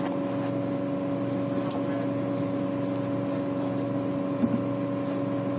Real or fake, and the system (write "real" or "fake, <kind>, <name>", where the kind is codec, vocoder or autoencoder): real